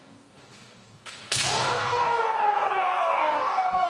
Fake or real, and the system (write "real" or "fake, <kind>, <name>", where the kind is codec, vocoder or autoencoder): fake, codec, DAC